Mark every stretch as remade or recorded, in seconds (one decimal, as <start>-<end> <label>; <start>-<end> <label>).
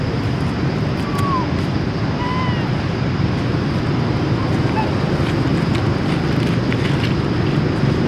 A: 0.0-5.5 recorded; 5.5-6.5 remade; 6.5-8.1 recorded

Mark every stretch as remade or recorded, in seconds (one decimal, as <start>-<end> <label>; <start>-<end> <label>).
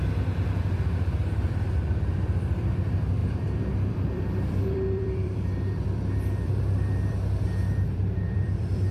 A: 0.0-8.9 remade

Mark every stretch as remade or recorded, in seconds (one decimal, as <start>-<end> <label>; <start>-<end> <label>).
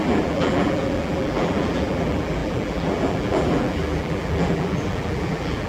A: 0.0-5.7 remade